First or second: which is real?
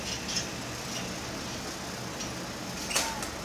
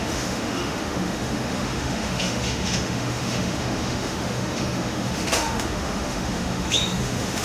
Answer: first